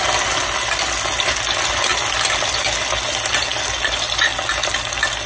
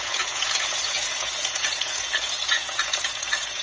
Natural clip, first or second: first